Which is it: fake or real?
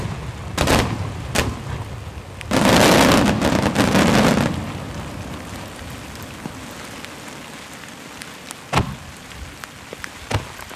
real